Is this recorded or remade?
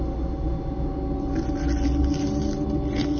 recorded